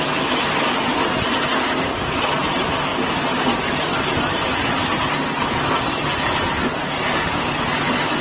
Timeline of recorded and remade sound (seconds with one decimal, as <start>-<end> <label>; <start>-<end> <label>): 0.0-8.2 recorded